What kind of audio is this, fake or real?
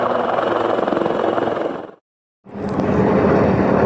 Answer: real